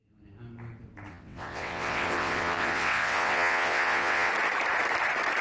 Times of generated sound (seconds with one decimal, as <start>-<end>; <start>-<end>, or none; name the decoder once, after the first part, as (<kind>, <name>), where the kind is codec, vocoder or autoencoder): 1.1-4.3 (vocoder, WaveNeXt)